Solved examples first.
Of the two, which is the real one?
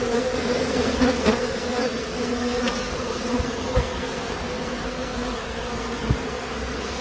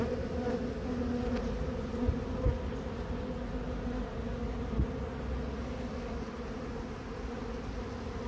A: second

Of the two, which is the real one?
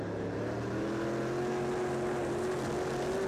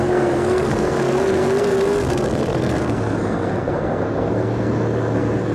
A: first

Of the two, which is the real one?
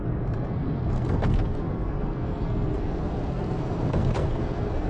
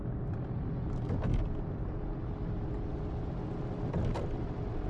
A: second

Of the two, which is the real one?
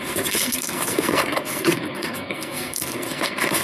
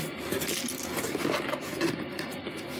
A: second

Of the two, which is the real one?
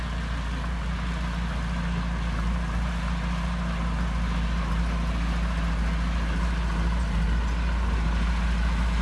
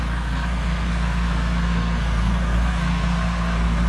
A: first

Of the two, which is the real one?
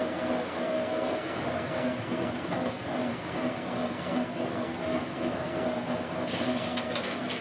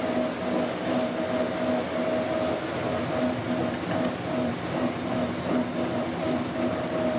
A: second